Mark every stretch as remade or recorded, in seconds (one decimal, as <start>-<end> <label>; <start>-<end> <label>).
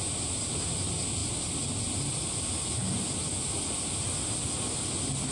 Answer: 0.0-5.3 recorded